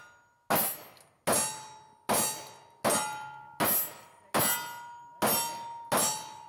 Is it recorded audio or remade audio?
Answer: recorded